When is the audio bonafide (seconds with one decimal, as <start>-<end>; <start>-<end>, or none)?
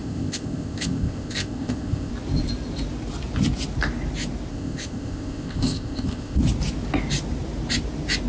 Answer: 2.1-4.5; 6.4-8.3